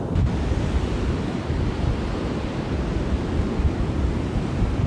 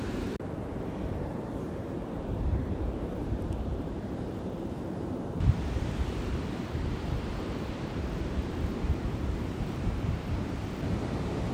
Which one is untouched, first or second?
first